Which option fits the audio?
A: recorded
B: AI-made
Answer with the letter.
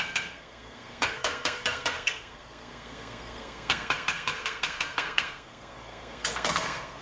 B